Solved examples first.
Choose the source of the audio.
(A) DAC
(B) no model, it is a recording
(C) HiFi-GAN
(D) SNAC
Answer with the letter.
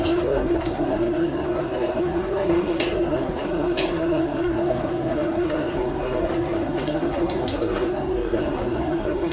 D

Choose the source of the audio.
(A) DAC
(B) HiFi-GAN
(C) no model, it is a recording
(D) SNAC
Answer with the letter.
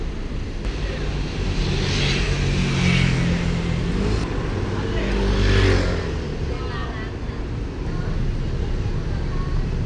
C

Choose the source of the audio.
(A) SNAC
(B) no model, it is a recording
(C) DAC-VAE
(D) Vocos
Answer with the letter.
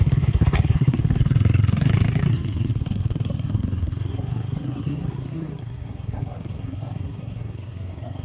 A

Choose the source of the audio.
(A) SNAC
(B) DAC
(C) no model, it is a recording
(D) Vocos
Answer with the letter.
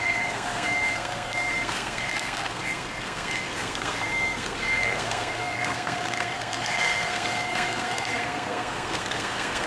A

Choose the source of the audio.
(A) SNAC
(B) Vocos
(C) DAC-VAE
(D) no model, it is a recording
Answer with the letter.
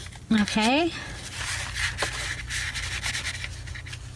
D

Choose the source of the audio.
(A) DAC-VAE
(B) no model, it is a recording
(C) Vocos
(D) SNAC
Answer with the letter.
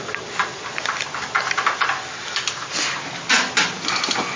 B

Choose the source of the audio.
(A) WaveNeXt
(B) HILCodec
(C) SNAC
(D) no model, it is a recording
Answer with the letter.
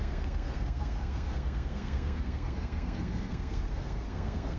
C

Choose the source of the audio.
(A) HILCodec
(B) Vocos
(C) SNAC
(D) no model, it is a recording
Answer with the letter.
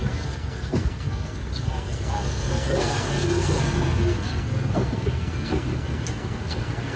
C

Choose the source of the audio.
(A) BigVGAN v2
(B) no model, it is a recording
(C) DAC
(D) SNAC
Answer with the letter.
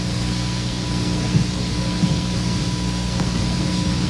D